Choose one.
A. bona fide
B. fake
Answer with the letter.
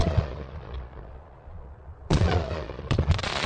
B